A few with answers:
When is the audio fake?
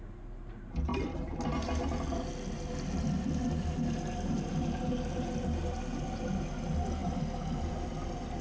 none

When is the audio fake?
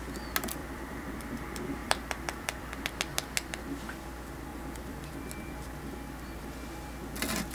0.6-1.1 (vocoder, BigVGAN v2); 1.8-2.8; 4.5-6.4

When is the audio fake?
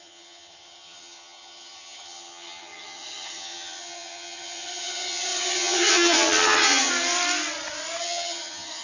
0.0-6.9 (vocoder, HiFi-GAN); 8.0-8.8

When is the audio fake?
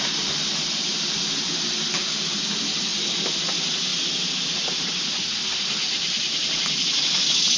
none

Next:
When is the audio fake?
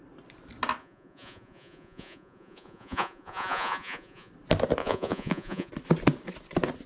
0.8-4.3 (vocoder, Vocos); 4.8-5.7